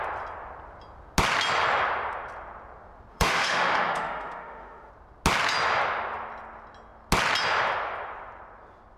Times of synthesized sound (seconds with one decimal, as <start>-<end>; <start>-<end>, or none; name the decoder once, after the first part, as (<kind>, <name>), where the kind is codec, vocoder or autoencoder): 3.1-4.9 (autoencoder, DAC-VAE)